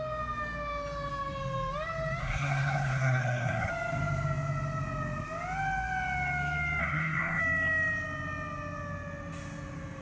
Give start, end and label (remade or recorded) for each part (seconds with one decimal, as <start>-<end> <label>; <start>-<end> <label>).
0.0-2.2 recorded; 2.2-3.7 remade; 3.7-6.8 recorded; 6.8-7.4 remade; 7.4-10.0 recorded